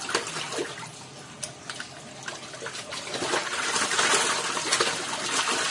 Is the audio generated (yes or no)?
no